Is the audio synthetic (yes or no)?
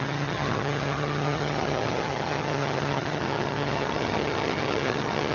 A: yes